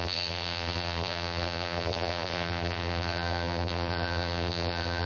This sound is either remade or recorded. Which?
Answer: remade